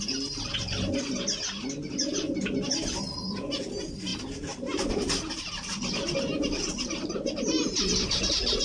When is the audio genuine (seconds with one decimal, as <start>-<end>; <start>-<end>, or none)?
0.0-8.6